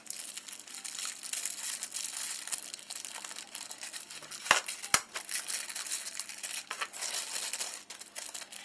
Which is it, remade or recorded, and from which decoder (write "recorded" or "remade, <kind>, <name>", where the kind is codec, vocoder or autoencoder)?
recorded